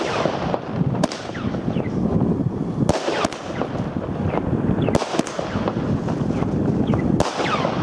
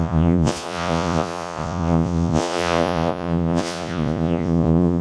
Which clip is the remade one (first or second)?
second